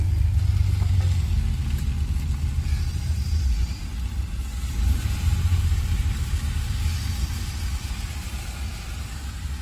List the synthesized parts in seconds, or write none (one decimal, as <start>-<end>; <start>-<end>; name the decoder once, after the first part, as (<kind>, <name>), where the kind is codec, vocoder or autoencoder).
2.9-3.9 (vocoder, BigVGAN v2); 4.5-9.6